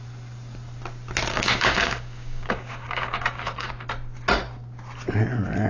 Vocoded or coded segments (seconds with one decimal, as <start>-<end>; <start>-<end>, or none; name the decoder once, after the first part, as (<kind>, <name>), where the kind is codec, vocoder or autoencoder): 1.3-3.7 (codec, DAC)